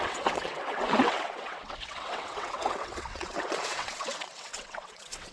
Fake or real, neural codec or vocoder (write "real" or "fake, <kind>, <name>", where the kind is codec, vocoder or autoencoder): fake, vocoder, WaveNeXt